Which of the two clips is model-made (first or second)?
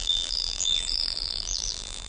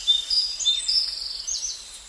first